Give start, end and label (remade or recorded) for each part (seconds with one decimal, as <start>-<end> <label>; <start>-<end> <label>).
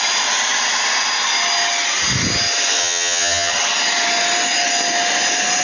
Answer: 0.0-2.8 recorded; 2.8-3.5 remade; 3.5-5.6 recorded